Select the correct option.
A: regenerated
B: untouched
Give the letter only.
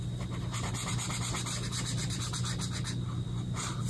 B